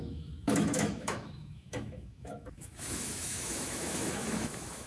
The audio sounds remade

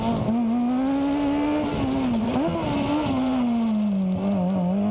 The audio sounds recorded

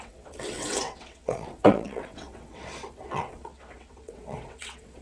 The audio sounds remade